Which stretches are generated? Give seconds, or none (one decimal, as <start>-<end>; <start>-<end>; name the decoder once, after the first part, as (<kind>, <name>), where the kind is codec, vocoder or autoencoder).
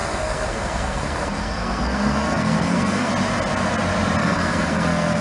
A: 0.0-3.1 (codec, SNAC); 4.2-5.2